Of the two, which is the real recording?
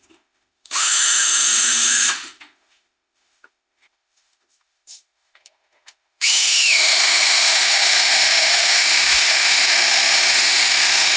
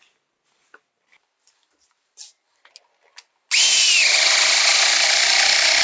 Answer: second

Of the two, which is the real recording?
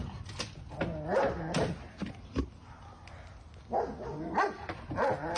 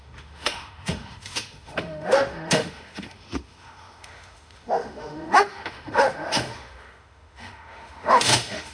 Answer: first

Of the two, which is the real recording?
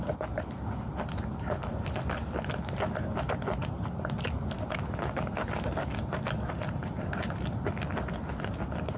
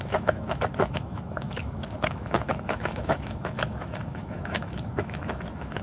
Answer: first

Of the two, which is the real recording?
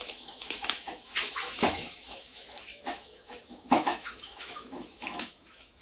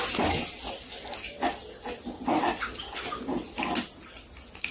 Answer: second